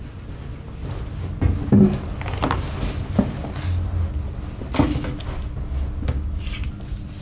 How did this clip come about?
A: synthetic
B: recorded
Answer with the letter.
B